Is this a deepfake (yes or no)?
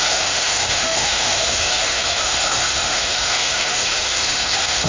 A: yes